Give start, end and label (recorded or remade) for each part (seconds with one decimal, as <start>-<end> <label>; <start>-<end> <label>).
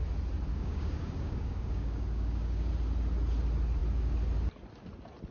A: 0.0-0.5 recorded; 0.5-2.7 remade; 2.7-5.3 recorded